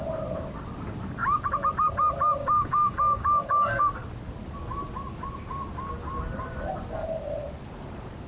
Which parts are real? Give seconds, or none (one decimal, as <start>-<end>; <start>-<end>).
0.0-2.4; 3.8-8.3